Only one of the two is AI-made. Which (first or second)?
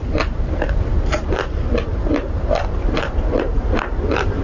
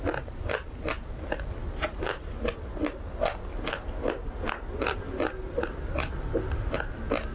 first